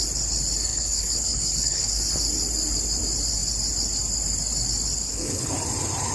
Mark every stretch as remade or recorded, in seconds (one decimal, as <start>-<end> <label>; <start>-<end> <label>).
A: 0.0-0.7 recorded; 0.7-2.0 remade; 2.0-5.0 recorded; 5.0-5.5 remade; 5.5-6.1 recorded